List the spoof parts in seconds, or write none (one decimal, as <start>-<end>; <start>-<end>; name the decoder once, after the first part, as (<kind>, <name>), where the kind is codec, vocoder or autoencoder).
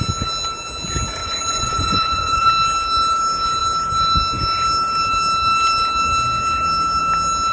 1.2-2.5 (vocoder, Vocos)